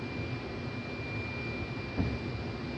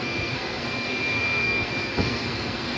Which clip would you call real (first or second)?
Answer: first